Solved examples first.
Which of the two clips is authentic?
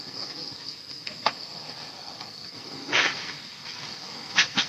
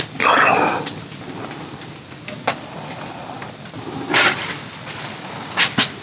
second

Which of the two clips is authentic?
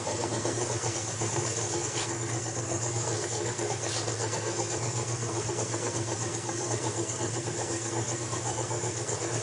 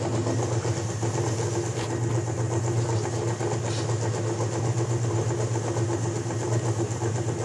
second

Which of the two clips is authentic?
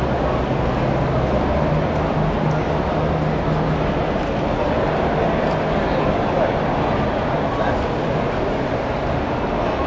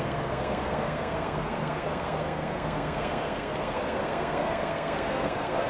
first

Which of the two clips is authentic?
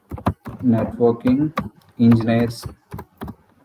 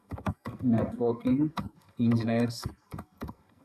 first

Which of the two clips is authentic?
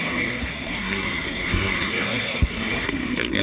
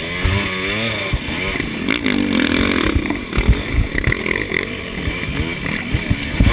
second